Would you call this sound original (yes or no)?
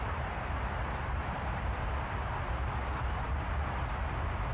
yes